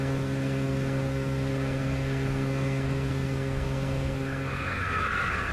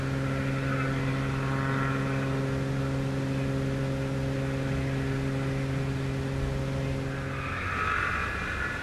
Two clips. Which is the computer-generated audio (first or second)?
first